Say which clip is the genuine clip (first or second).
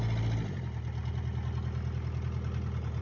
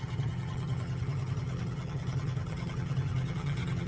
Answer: first